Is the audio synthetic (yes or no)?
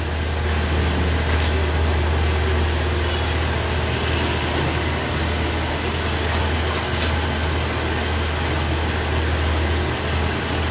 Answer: no